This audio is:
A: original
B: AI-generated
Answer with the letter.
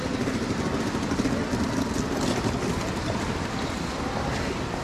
A